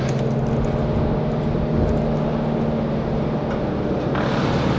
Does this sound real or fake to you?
real